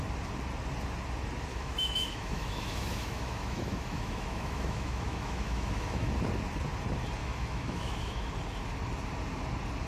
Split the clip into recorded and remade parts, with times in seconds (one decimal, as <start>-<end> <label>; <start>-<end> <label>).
0.0-1.5 recorded; 1.5-6.1 remade; 6.1-7.2 recorded; 7.2-8.3 remade; 8.3-9.9 recorded